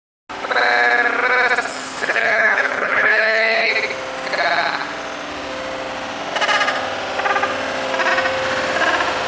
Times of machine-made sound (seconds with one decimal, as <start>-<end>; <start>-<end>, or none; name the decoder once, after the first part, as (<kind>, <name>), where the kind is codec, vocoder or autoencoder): 1.7-3.7 (codec, HILCodec)